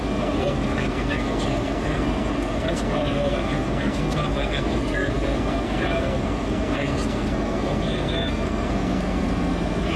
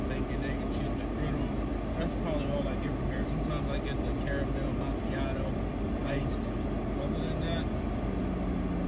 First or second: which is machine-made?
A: first